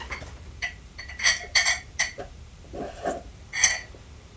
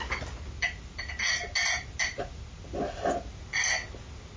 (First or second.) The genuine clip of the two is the second